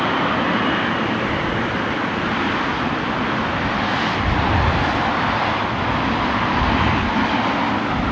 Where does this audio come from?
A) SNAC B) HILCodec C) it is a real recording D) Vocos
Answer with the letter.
C